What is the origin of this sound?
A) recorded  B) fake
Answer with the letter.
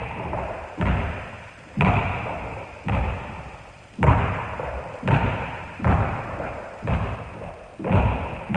A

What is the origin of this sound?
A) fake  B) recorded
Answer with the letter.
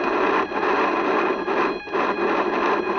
B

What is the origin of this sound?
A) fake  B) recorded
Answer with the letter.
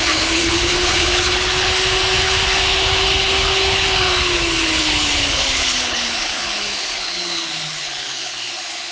A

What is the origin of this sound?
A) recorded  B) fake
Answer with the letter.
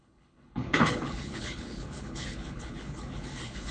B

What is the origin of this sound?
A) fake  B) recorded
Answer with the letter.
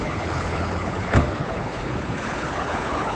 A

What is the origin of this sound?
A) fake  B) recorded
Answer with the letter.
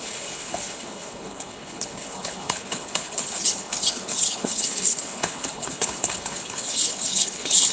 A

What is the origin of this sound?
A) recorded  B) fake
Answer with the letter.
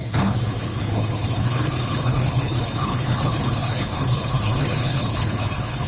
B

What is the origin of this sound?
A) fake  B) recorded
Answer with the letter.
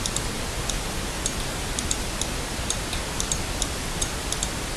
B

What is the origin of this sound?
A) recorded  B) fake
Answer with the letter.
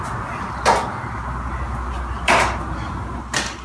A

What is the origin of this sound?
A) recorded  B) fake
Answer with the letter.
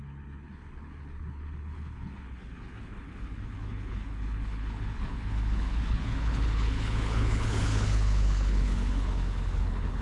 B